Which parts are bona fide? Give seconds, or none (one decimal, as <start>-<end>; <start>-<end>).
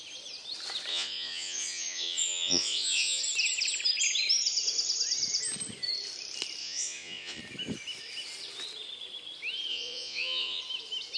0.0-0.9; 3.2-6.6; 7.4-9.7; 10.6-11.2